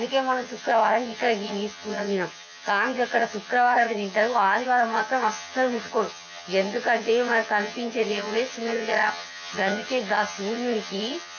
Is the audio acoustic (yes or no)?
no